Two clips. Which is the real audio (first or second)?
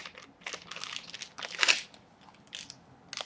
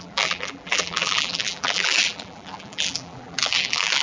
first